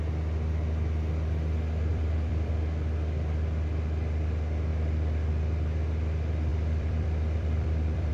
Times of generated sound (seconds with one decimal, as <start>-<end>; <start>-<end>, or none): 1.9-2.5; 6.5-8.1